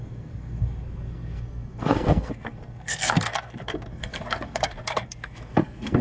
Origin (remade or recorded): remade